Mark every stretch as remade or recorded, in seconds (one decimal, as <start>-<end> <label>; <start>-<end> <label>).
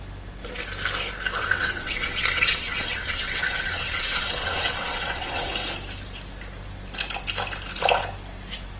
0.0-1.4 recorded; 1.4-5.5 remade; 5.5-8.8 recorded